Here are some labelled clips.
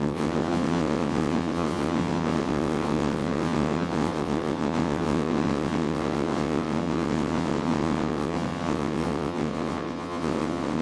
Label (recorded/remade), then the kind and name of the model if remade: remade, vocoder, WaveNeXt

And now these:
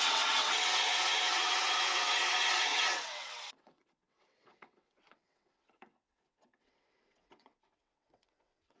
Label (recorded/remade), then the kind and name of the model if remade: remade, vocoder, WaveNeXt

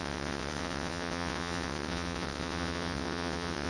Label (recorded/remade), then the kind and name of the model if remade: remade, vocoder, WaveNeXt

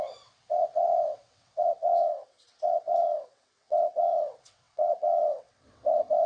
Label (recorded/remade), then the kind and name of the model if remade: remade, vocoder, WaveNeXt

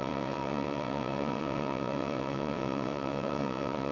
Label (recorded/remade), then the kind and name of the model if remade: remade, vocoder, WaveNeXt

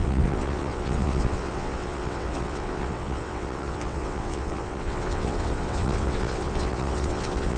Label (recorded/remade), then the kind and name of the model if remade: remade, vocoder, WaveNeXt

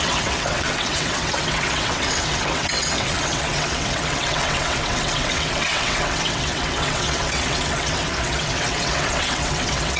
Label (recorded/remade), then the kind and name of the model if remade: remade, vocoder, WaveNeXt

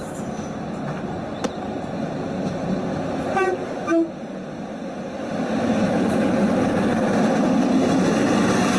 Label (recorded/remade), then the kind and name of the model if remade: recorded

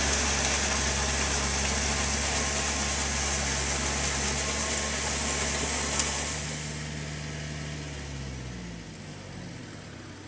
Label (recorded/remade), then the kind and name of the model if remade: recorded